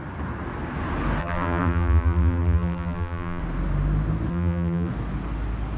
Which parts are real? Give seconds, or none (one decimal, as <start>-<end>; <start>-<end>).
0.0-1.2; 3.4-4.3; 4.9-5.8